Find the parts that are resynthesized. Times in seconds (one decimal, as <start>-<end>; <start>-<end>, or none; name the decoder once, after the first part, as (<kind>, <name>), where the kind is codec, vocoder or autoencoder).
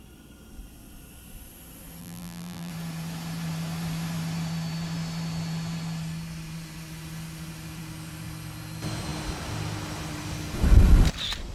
2.0-2.7 (vocoder, BigVGAN v2)